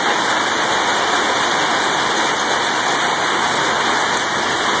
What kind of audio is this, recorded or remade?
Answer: recorded